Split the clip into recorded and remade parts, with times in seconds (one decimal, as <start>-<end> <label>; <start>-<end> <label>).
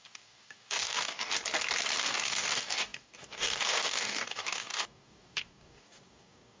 0.0-1.3 remade; 1.3-2.0 recorded; 2.0-6.6 remade